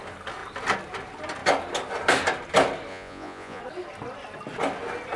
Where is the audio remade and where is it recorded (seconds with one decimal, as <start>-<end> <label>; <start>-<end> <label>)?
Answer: 0.0-2.9 recorded; 2.9-3.6 remade; 3.6-5.2 recorded

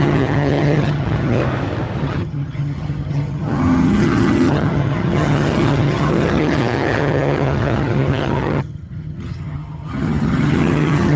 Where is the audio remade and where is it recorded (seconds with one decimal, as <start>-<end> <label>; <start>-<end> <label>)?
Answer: 0.0-1.4 remade; 1.4-2.0 recorded; 2.0-11.2 remade

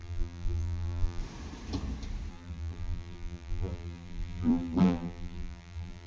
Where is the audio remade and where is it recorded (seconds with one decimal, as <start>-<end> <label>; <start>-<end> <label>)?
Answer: 0.0-1.2 remade; 1.2-2.3 recorded; 2.3-6.1 remade